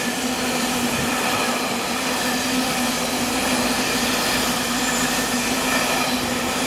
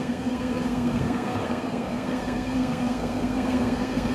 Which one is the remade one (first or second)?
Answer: second